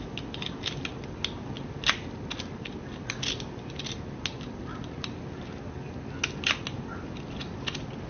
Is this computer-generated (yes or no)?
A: no